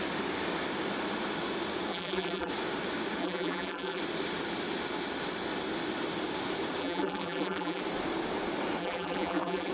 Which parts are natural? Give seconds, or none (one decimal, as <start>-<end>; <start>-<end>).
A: 0.0-1.9; 2.5-3.2; 4.0-6.8; 7.8-8.8